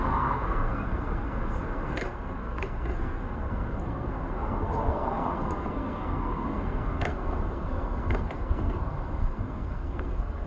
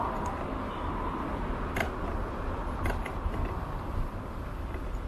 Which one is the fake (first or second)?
first